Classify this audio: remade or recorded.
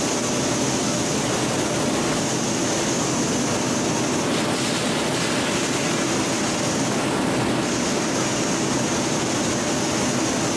recorded